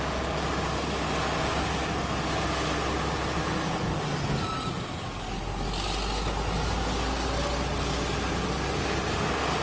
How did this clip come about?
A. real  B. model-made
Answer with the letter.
A